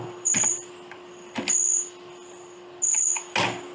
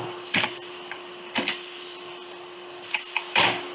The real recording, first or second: first